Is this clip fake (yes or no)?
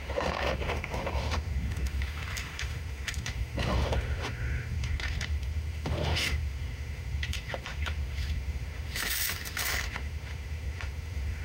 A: yes